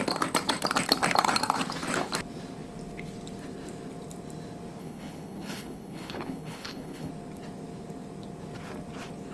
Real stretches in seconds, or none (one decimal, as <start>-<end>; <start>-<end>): 0.0-4.8; 7.1-9.3